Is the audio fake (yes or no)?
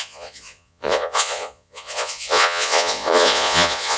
yes